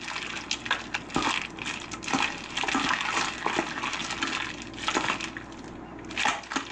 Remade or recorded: recorded